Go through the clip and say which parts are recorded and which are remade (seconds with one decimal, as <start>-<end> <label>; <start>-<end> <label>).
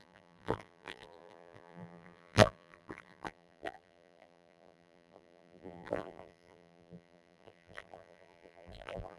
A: 0.0-9.2 remade